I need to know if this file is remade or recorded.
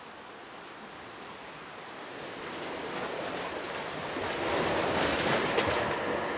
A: recorded